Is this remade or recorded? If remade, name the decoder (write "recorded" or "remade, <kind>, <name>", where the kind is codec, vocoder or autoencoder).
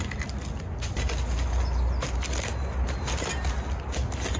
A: recorded